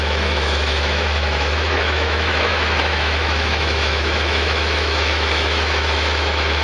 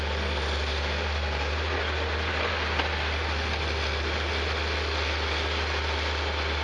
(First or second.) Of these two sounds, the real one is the second